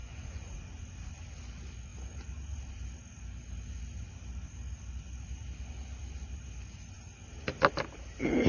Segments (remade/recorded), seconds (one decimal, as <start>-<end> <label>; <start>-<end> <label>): 0.0-0.5 remade; 0.5-8.5 recorded